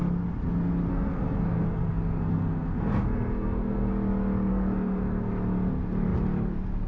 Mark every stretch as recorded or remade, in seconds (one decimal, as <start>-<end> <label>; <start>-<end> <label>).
0.0-0.9 recorded; 0.9-3.9 remade; 3.9-4.5 recorded; 4.5-5.3 remade; 5.3-6.9 recorded